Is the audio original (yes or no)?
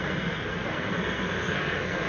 no